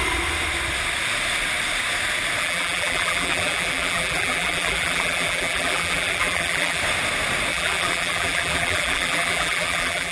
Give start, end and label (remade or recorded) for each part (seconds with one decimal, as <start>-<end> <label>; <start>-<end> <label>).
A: 0.0-2.4 recorded; 2.4-6.8 remade; 6.8-7.5 recorded; 7.5-10.1 remade

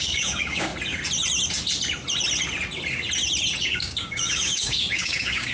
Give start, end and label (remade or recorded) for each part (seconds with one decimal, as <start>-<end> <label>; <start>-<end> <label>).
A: 0.0-0.7 remade; 0.7-3.6 recorded; 3.6-5.5 remade

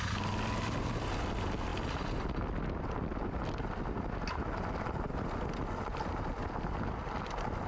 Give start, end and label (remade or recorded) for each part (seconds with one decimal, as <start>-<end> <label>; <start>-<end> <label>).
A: 0.0-7.7 recorded

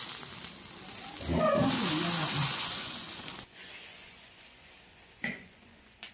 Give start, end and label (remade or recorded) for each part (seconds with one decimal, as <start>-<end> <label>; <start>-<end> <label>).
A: 0.0-2.4 recorded; 2.4-6.1 remade

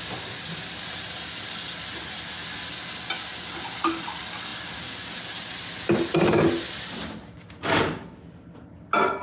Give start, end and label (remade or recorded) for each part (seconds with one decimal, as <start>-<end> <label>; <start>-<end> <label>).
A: 0.0-9.2 recorded

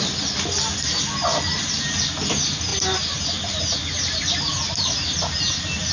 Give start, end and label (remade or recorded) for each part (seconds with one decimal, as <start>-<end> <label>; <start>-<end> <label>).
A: 0.0-5.9 recorded